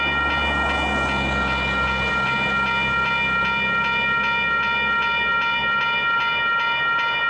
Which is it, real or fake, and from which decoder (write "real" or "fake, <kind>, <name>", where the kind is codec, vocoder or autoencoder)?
real